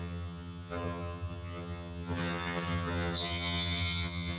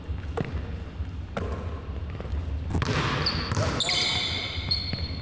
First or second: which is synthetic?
first